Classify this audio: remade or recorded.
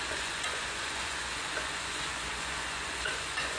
remade